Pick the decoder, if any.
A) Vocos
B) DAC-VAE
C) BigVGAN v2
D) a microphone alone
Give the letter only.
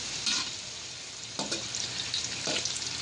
D